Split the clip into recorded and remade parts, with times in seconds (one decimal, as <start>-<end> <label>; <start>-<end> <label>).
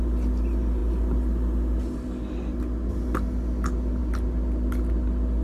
0.0-5.4 recorded